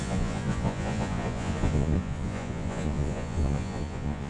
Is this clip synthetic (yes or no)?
yes